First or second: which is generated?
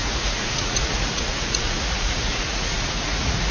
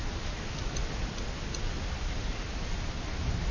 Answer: first